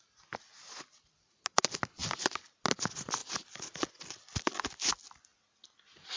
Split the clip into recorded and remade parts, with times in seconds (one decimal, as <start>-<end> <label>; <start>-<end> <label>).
0.0-6.2 recorded